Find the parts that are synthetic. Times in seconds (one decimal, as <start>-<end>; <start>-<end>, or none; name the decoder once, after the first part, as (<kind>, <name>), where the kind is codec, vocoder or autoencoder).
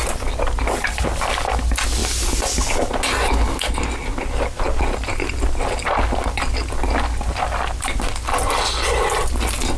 none